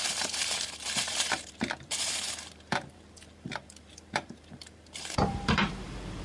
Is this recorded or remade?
remade